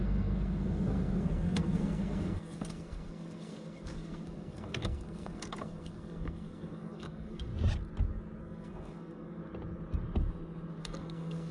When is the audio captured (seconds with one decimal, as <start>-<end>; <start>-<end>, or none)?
7.5-8.4; 9.4-10.8